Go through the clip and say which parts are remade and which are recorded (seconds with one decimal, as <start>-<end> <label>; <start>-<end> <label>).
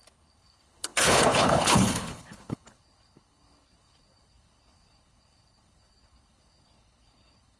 0.0-7.6 remade